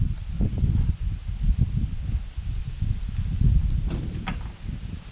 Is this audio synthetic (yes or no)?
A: no